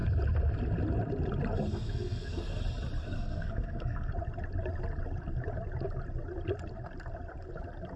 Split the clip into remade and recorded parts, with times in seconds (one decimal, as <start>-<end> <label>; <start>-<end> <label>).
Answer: 0.0-1.7 recorded; 1.7-2.6 remade; 2.6-3.0 recorded; 3.0-4.1 remade; 4.1-8.0 recorded